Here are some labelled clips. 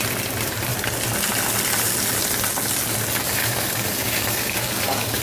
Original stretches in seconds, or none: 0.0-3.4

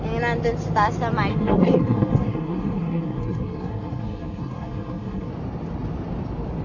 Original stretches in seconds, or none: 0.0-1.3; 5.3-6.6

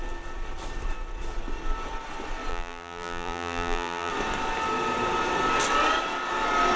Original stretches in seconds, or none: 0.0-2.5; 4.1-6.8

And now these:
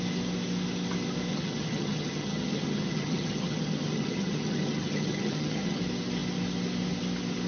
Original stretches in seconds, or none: 0.0-1.3; 5.8-7.5

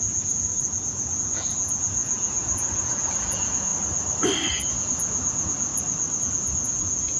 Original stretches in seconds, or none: 3.7-4.5; 5.7-6.2

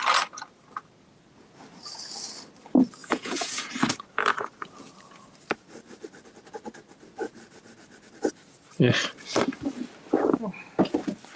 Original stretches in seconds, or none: 0.0-3.0; 3.7-11.4

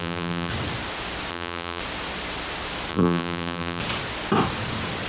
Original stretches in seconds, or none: 0.5-1.3; 1.8-2.9; 3.8-5.1